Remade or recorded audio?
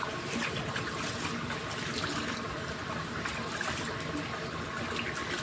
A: recorded